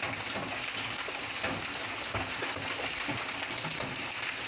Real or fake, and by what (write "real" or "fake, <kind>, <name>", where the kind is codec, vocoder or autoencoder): real